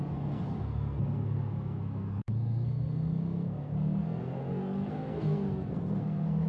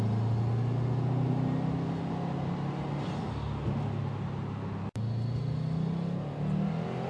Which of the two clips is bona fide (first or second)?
second